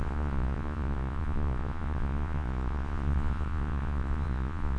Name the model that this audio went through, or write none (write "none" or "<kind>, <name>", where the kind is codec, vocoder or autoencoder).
vocoder, Vocos